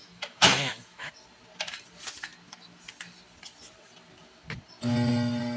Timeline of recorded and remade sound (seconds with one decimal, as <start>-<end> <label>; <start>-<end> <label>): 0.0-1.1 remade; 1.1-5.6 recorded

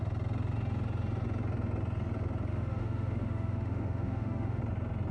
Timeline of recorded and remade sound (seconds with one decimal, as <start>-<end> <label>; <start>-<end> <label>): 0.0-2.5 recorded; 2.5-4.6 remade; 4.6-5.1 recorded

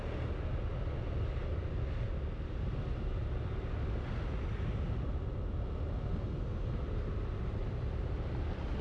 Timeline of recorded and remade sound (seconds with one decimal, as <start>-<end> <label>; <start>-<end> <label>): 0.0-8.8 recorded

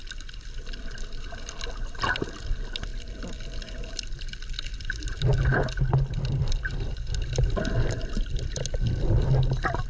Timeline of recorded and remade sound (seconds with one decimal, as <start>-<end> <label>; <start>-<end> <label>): 0.0-9.9 recorded

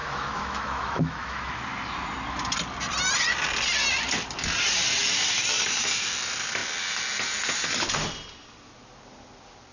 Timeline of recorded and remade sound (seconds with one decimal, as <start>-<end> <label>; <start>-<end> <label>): 0.0-1.6 remade; 1.6-9.7 recorded

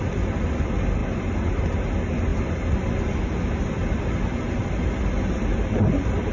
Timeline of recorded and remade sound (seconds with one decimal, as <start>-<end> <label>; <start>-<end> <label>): 0.0-6.3 recorded